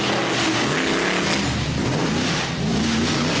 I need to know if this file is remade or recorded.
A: recorded